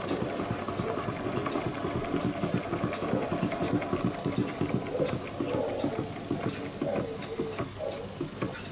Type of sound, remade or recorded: recorded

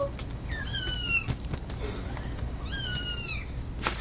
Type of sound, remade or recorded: recorded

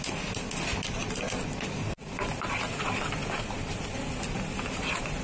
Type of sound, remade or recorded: recorded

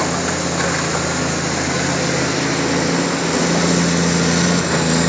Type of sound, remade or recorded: recorded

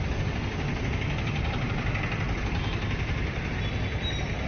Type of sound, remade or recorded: recorded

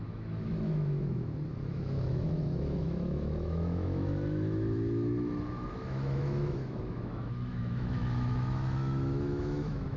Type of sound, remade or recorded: remade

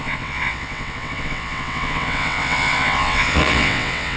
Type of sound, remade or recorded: remade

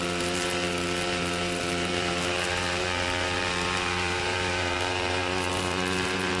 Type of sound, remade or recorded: remade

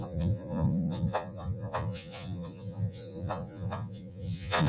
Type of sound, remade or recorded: remade